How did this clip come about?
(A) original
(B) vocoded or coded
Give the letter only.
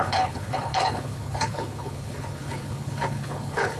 B